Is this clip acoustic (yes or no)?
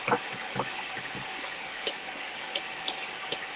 no